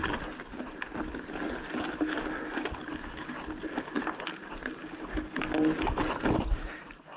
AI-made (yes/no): no